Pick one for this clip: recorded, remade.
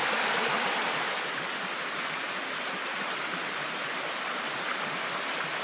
recorded